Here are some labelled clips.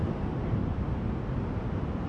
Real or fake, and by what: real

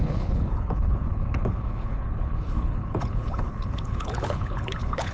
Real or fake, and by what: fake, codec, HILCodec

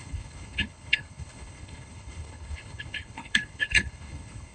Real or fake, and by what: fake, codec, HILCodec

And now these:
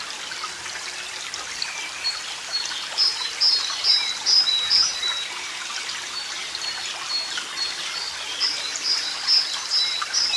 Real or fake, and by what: real